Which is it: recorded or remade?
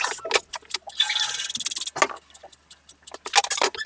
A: recorded